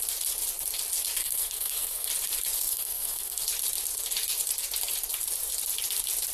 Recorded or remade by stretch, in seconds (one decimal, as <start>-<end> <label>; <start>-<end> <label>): 0.0-1.2 recorded; 1.2-2.1 remade; 2.1-2.7 recorded; 2.7-3.4 remade; 3.4-6.3 recorded